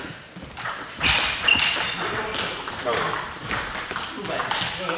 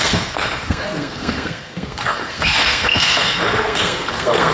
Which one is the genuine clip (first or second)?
first